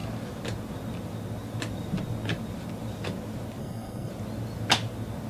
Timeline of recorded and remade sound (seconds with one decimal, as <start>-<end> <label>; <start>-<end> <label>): 0.0-3.6 recorded; 3.6-4.1 remade; 4.1-5.3 recorded

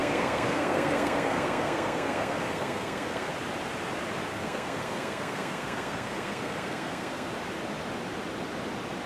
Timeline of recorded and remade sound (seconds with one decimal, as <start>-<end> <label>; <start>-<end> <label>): 0.0-3.3 remade; 3.3-4.3 recorded; 4.3-7.3 remade; 7.3-9.1 recorded